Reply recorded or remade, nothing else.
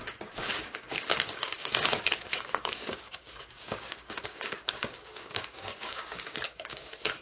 remade